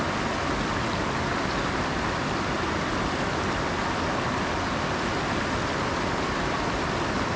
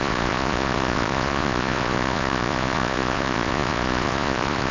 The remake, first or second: second